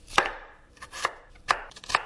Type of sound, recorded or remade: remade